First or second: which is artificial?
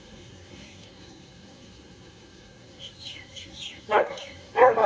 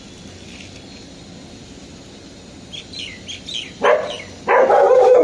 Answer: first